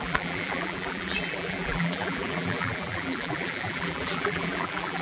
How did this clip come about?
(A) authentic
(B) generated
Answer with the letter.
B